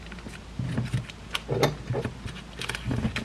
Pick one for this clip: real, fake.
real